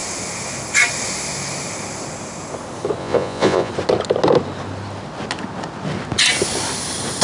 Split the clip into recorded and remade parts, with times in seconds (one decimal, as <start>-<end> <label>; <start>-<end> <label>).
0.0-3.0 recorded; 3.0-3.7 remade; 3.7-7.2 recorded